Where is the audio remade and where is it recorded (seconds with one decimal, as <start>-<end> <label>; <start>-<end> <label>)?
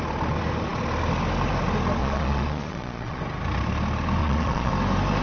0.0-2.0 recorded; 2.0-3.2 remade; 3.2-4.2 recorded; 4.2-4.7 remade; 4.7-5.2 recorded